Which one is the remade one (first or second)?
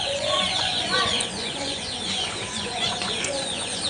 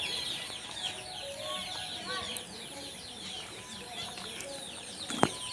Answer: first